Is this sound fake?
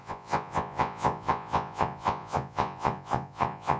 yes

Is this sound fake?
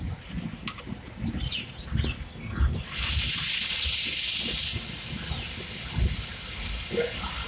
no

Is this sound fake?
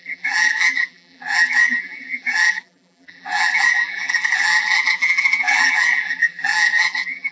yes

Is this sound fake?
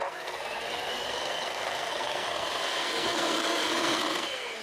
yes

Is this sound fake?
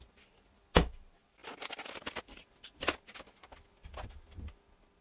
no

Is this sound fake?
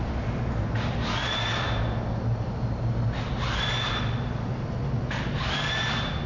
no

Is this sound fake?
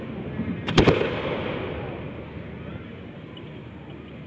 no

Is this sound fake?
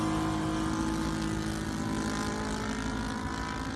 no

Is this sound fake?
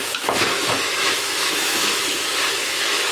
yes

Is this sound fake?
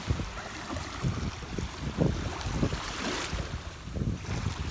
no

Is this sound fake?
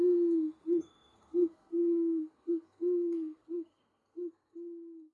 yes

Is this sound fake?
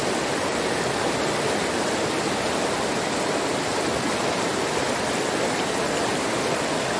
no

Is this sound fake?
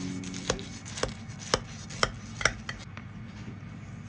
no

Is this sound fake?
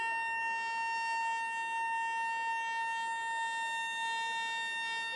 no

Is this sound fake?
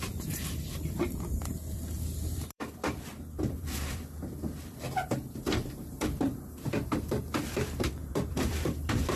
yes